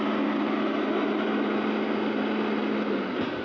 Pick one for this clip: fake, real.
real